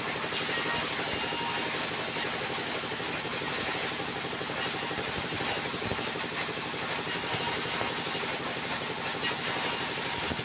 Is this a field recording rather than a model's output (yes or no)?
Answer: yes